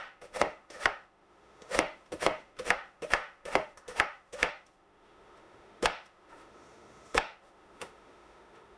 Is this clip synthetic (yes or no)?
yes